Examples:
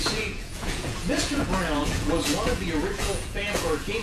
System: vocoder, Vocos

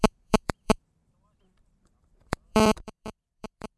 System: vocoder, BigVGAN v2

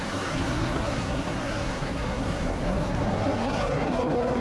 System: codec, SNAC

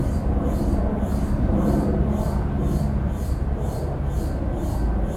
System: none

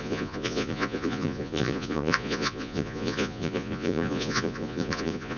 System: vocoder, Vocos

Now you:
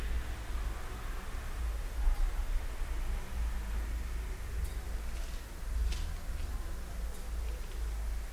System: none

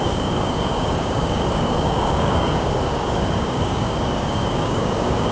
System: codec, DAC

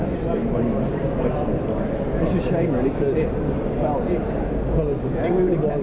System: none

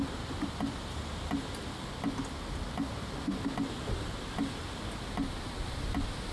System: none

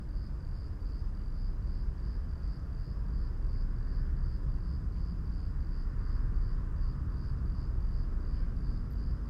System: none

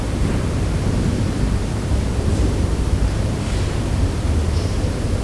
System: vocoder, BigVGAN v2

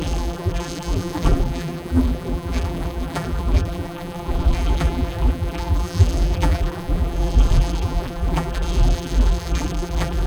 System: vocoder, BigVGAN v2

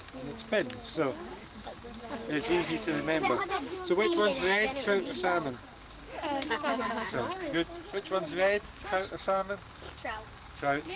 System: codec, DAC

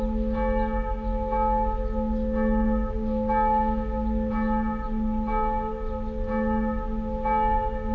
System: none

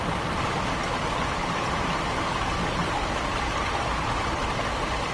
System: none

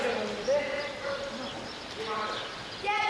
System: none